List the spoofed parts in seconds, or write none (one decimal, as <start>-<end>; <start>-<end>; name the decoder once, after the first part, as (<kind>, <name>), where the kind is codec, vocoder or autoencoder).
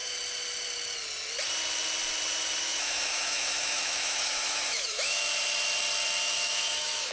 2.6-5.3 (autoencoder, DAC-VAE); 6.2-7.1